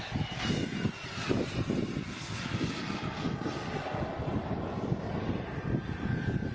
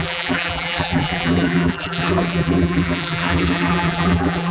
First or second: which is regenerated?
second